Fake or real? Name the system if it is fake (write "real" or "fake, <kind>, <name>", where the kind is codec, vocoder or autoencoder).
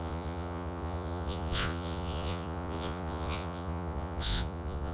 fake, vocoder, Vocos